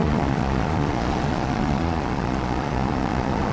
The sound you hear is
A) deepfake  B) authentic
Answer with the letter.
A